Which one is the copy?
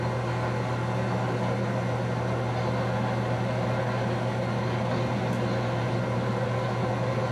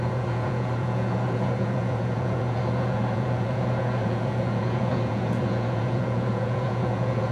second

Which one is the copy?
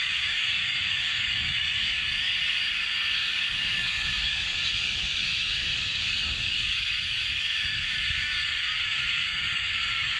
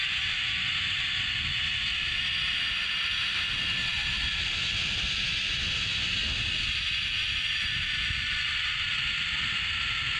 first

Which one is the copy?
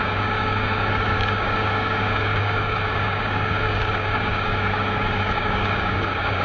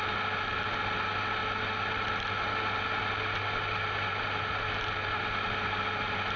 first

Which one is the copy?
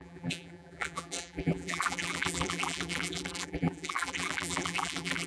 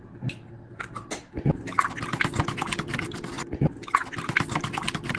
first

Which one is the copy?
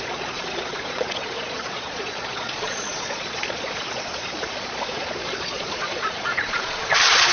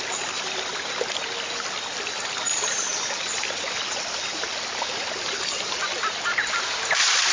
first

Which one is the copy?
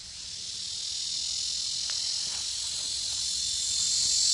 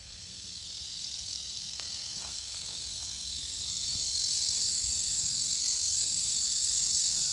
second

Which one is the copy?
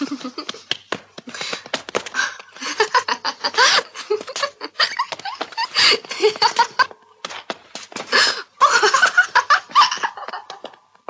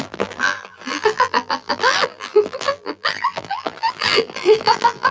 second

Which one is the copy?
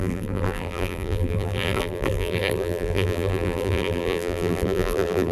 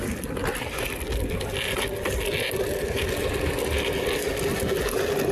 first